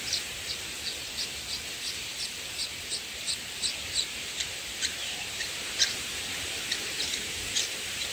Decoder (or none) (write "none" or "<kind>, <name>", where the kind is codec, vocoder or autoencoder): vocoder, BigVGAN v2